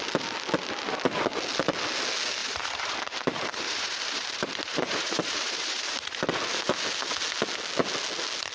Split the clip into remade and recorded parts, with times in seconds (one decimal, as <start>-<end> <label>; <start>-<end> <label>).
0.0-2.4 recorded; 2.4-6.3 remade; 6.3-8.5 recorded